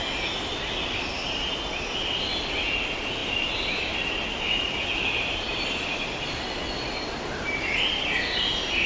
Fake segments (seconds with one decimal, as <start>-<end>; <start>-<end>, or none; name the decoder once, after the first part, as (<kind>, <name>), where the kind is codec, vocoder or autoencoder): none